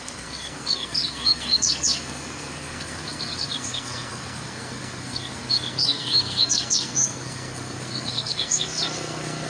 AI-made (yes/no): yes